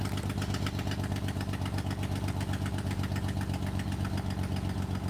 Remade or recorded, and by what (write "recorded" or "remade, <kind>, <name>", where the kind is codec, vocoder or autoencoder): recorded